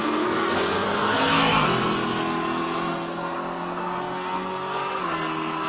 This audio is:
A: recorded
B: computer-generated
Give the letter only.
B